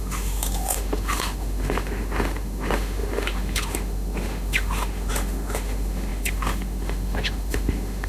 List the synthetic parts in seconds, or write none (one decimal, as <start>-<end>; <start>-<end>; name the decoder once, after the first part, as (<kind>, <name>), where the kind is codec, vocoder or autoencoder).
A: 0.0-8.1 (autoencoder, DAC-VAE)